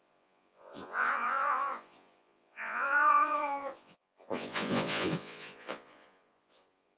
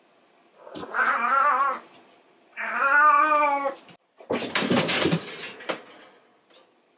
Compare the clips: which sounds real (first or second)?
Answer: second